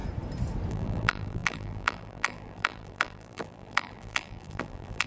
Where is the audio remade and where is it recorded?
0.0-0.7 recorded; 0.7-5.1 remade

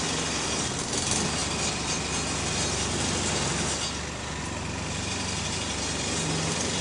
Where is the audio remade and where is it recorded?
0.0-6.8 recorded

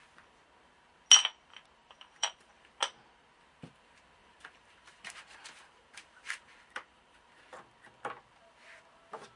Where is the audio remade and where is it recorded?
0.0-1.8 recorded; 1.8-2.7 remade; 2.7-4.2 recorded; 4.2-7.3 remade; 7.3-9.4 recorded

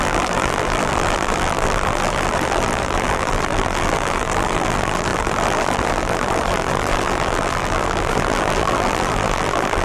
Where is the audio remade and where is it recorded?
0.0-9.8 remade